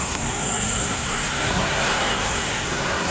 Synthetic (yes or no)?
yes